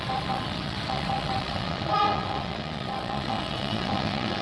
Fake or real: fake